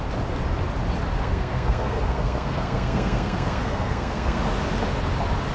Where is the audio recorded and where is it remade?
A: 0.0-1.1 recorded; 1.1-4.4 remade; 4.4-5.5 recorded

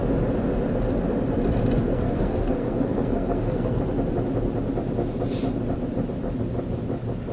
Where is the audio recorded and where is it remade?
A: 0.0-1.9 recorded; 1.9-3.8 remade; 3.8-7.3 recorded

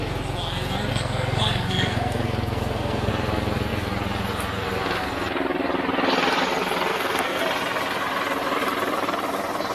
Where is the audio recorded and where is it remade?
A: 0.0-0.9 recorded; 0.9-3.1 remade; 3.1-6.9 recorded; 6.9-7.4 remade; 7.4-9.7 recorded